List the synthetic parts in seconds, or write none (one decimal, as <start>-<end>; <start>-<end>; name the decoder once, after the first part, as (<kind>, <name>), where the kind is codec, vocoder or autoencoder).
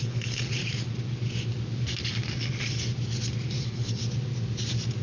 0.0-0.6 (codec, HILCodec); 3.6-4.0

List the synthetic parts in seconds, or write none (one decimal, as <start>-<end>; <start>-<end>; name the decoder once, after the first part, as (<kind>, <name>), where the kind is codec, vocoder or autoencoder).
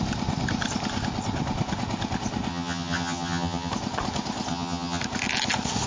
2.5-3.7 (vocoder, HiFi-GAN); 4.5-5.0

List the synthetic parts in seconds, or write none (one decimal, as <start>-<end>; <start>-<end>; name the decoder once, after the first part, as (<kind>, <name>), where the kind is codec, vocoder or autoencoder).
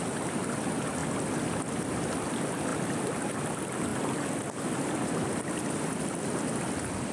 none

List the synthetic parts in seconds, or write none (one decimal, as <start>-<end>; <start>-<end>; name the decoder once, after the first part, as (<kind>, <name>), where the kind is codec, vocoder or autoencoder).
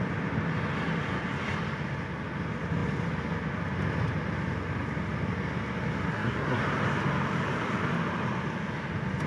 6.1-6.6 (codec, SNAC)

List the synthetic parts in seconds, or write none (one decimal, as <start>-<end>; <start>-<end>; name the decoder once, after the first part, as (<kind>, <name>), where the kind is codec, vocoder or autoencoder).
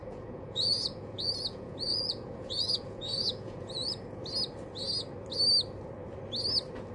0.0-4.1 (vocoder, Vocos)